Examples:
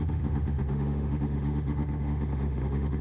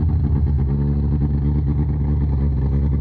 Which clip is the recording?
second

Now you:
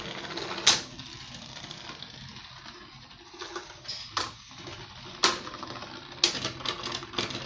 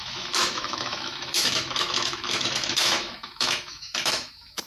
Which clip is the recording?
first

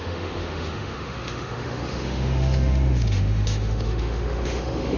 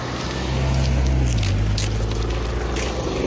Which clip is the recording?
second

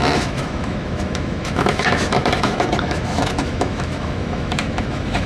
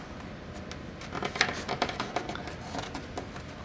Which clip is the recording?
second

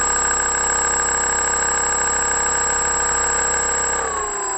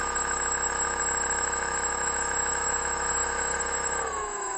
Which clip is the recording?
first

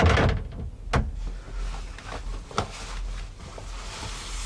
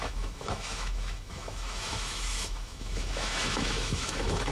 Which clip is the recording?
first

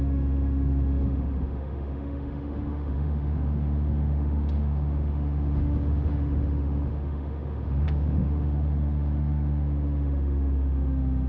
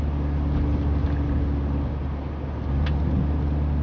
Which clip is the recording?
second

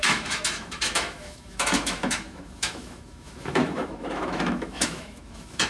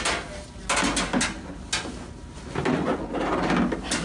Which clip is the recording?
second